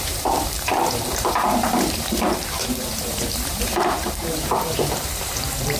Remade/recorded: remade